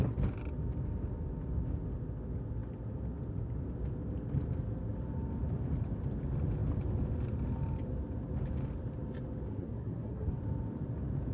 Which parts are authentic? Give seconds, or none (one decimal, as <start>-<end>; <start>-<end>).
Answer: 0.0-9.5; 10.4-11.3

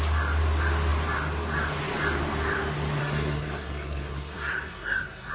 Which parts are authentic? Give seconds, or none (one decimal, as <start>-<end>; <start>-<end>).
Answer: 0.0-3.0

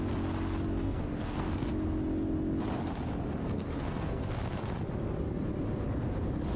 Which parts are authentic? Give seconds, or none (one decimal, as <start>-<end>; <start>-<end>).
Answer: 0.0-0.8; 1.7-3.4; 4.3-6.6

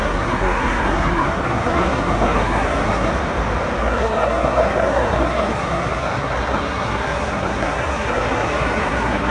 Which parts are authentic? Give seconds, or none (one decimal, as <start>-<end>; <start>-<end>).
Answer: 3.1-3.8